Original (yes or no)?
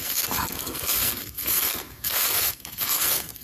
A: no